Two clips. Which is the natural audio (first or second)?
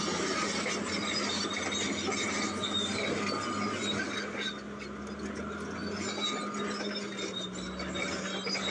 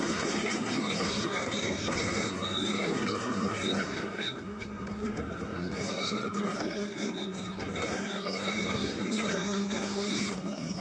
first